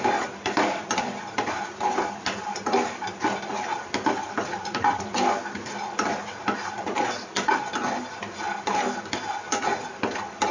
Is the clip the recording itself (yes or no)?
yes